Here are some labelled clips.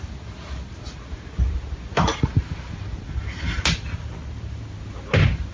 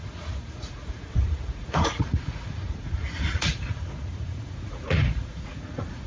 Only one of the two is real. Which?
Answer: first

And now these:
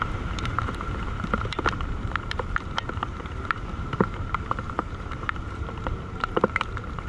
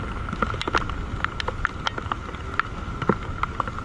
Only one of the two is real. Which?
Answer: second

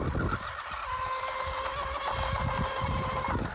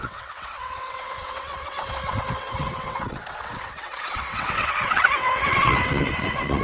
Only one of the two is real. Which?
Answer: first